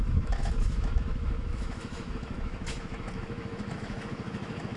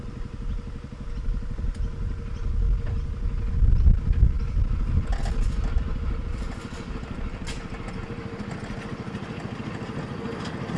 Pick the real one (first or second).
second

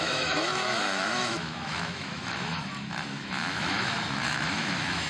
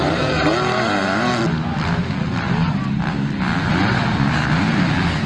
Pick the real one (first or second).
second